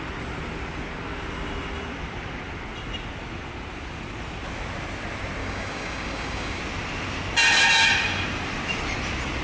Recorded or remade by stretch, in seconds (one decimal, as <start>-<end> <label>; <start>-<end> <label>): 0.0-5.4 recorded; 5.4-6.6 remade; 6.6-9.4 recorded